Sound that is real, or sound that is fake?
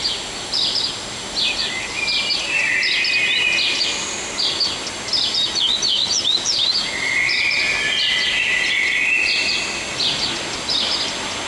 real